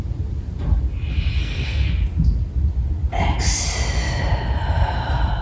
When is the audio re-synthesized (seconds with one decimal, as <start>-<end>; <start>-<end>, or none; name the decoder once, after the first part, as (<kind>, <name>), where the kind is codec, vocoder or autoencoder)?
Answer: 1.4-1.9 (codec, SNAC)